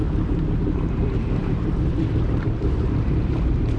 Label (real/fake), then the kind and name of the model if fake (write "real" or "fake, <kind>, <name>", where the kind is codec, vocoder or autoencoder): fake, vocoder, BigVGAN v2